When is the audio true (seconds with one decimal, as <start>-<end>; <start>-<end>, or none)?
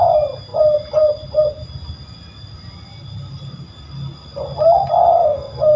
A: 0.0-5.2